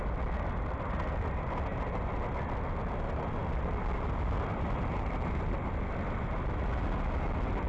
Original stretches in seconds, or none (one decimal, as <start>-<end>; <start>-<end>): 0.0-7.7